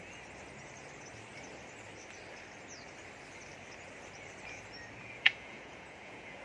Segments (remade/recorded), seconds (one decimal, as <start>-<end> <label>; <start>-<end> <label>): 0.0-5.0 recorded; 5.0-6.4 remade